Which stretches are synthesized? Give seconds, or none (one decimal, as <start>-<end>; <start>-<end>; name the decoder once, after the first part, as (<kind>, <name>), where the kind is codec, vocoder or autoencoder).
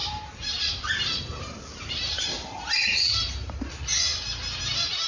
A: 1.3-3.6 (vocoder, BigVGAN v2)